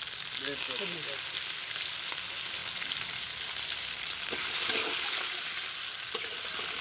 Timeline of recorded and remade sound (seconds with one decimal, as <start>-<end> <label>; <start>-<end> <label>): 0.0-6.8 recorded